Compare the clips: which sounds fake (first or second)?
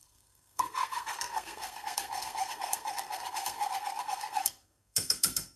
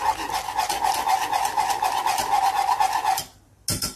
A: first